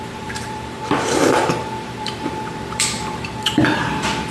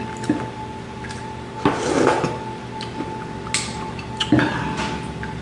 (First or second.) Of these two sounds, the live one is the second